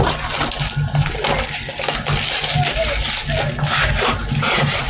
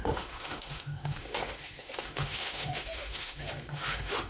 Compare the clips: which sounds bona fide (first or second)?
first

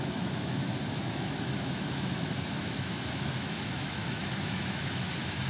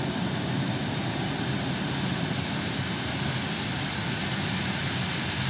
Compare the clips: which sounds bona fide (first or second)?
second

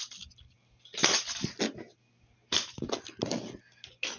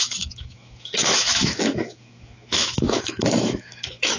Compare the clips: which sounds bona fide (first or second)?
first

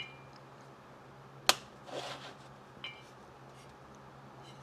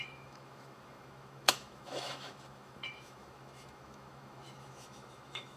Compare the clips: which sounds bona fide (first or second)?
first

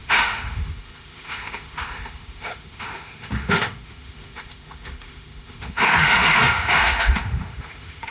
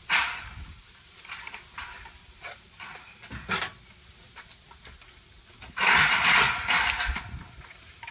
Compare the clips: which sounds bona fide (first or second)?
second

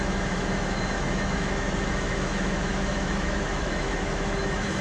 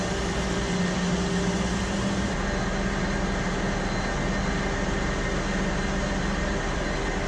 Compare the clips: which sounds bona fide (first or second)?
second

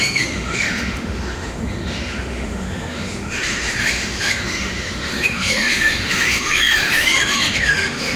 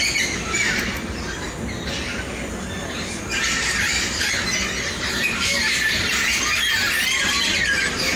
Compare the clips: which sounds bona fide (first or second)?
second